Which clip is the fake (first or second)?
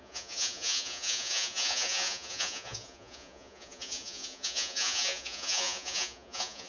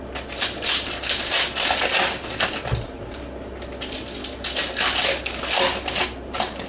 first